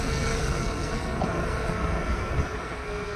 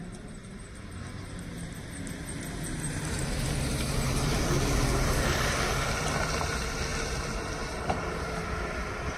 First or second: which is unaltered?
second